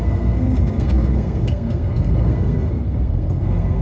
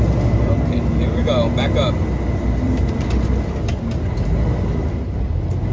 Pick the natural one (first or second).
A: second